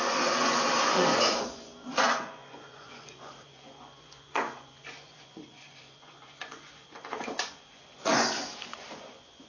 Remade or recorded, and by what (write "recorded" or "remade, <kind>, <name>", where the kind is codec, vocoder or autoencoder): remade, vocoder, Vocos